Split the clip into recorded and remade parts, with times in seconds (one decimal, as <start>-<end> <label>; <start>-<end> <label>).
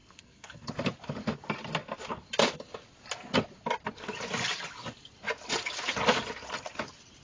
0.0-0.7 remade; 0.7-7.2 recorded